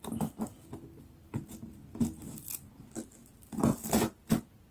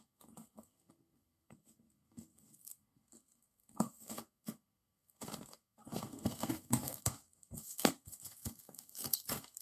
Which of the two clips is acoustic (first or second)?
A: first